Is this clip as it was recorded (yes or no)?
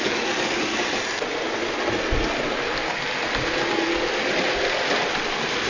yes